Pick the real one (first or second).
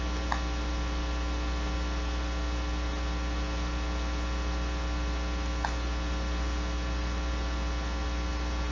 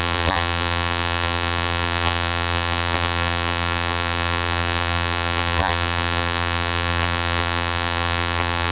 first